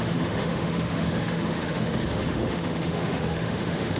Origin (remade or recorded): remade